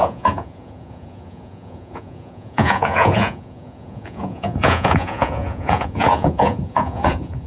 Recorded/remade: remade